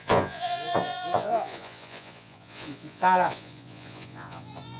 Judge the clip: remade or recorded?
remade